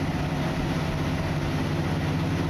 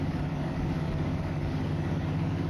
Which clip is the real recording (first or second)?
first